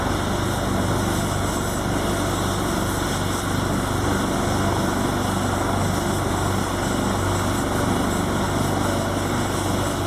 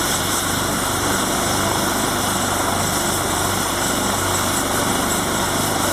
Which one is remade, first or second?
second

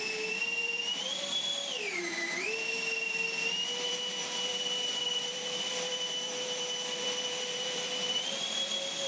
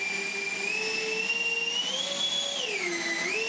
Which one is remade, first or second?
first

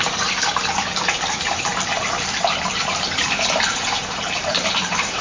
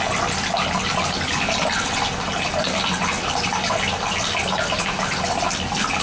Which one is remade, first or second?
first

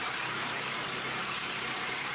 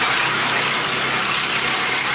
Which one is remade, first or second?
first